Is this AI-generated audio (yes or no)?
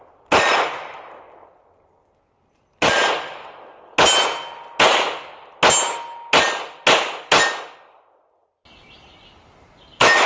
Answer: no